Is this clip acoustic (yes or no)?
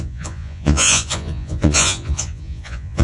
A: no